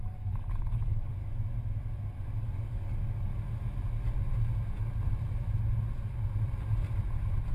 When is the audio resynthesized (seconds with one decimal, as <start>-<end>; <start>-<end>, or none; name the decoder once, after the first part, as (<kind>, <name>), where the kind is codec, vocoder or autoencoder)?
0.0-1.2 (codec, DAC); 2.4-3.3